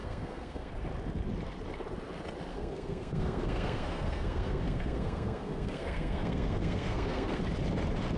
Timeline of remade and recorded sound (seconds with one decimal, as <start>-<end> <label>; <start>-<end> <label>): 0.0-0.7 remade; 0.7-2.5 recorded; 2.5-7.4 remade; 7.4-8.2 recorded